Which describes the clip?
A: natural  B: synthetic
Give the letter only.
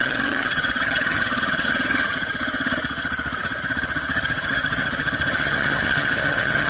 B